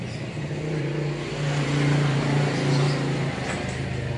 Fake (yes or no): no